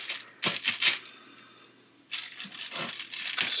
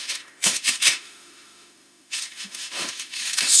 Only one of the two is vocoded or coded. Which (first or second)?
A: second